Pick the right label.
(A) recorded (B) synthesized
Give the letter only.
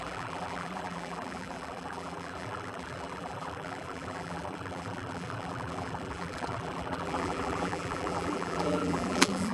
B